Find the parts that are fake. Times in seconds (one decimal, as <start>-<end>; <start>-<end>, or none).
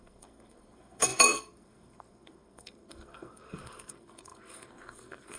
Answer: 0.0-5.4